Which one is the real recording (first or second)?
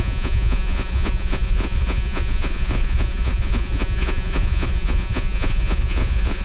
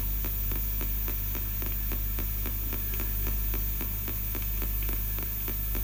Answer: second